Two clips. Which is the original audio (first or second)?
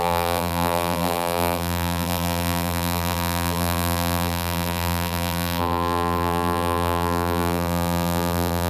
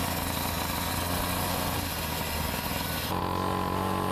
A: second